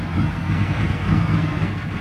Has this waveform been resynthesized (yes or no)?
yes